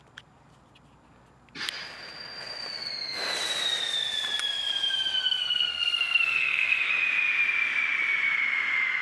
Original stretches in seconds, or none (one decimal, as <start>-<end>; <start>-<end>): 0.0-5.2; 6.9-9.0